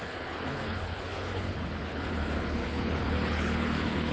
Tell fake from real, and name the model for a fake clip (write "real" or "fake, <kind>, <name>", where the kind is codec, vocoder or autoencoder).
fake, codec, HILCodec